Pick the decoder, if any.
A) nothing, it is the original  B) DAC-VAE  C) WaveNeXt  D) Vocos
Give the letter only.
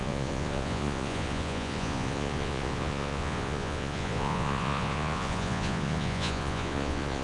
D